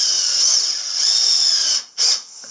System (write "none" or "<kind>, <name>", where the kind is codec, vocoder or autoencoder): vocoder, Vocos